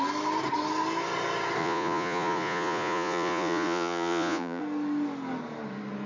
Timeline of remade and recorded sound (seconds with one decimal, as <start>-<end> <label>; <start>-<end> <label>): 0.0-1.6 recorded; 1.6-4.6 remade; 4.6-6.1 recorded